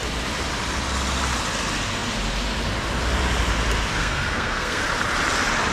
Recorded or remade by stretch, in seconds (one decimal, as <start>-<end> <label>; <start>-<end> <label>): 0.0-4.0 recorded; 4.0-4.8 remade; 4.8-5.7 recorded